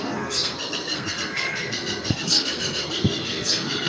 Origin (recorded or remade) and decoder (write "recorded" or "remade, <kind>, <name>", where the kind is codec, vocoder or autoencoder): remade, codec, SNAC